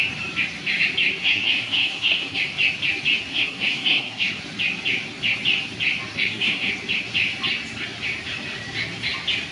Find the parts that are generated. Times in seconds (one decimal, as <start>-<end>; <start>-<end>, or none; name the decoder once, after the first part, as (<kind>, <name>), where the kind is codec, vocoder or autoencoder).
1.2-2.4 (codec, SNAC); 3.3-4.4; 6.1-6.7